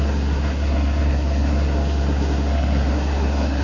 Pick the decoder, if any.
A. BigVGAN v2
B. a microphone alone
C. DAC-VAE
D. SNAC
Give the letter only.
D